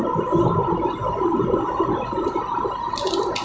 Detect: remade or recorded recorded